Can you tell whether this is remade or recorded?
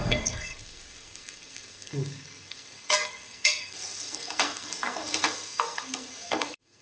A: remade